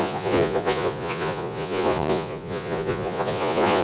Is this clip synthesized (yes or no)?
yes